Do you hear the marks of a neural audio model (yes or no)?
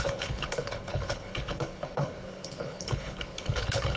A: yes